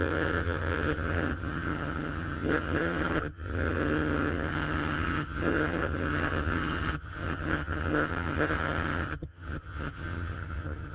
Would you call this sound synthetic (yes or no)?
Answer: yes